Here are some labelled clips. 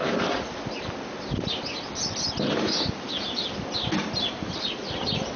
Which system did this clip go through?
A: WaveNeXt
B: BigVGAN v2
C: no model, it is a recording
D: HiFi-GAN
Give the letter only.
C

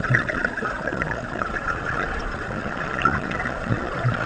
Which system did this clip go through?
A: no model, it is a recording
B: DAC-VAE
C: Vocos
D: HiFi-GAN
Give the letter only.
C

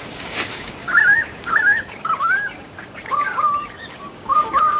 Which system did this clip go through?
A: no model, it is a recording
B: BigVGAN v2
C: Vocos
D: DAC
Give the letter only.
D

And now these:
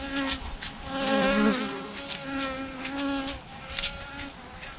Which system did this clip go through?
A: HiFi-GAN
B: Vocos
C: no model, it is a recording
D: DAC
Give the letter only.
C